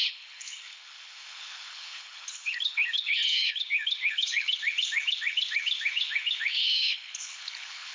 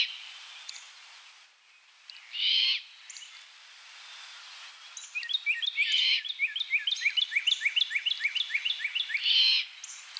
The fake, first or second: first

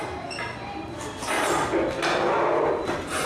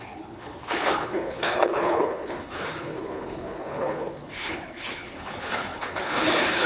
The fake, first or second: second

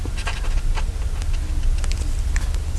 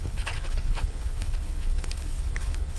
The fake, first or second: second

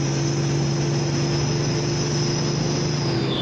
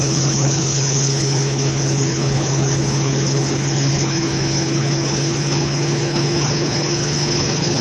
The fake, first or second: second